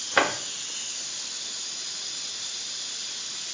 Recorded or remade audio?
recorded